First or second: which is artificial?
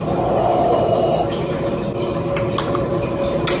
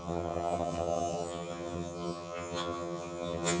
second